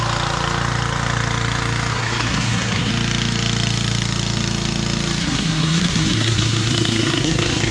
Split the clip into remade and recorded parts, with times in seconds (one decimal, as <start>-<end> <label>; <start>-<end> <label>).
0.0-1.9 recorded; 1.9-2.9 remade; 2.9-5.2 recorded; 5.2-7.7 remade